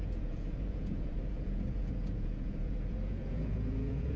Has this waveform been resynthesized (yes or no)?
yes